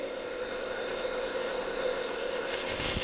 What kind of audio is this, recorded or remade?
remade